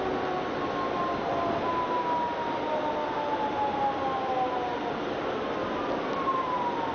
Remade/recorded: recorded